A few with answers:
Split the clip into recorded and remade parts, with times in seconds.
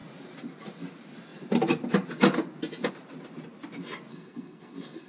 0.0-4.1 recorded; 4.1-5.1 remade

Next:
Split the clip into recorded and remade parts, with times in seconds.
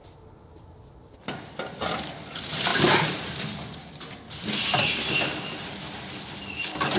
0.0-7.0 recorded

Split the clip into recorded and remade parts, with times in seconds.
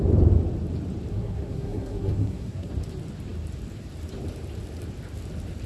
0.0-1.1 recorded; 1.1-2.7 remade; 2.7-5.7 recorded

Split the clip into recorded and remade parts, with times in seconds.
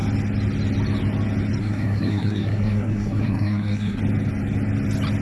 0.0-1.6 recorded; 1.6-4.0 remade; 4.0-5.2 recorded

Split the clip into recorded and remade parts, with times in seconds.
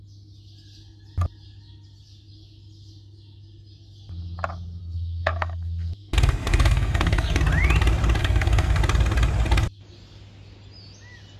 0.0-4.8 recorded; 4.8-7.4 remade; 7.4-8.2 recorded; 8.2-8.8 remade; 8.8-11.4 recorded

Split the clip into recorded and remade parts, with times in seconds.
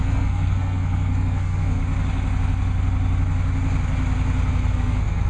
0.0-1.8 remade; 1.8-4.7 recorded; 4.7-5.3 remade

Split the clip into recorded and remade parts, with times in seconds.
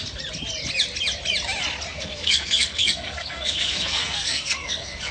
0.0-1.9 recorded; 1.9-5.1 remade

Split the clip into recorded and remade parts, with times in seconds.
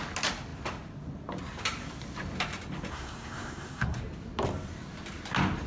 0.0-2.9 recorded; 2.9-4.0 remade; 4.0-5.7 recorded